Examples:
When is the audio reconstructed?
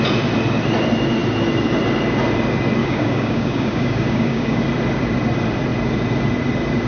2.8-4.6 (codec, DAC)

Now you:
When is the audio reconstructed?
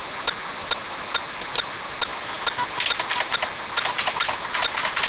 none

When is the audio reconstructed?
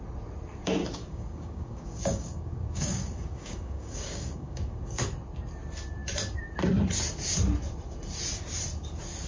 0.8-5.0 (codec, DAC)